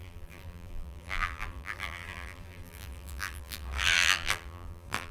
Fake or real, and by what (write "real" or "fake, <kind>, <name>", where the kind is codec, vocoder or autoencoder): fake, vocoder, BigVGAN v2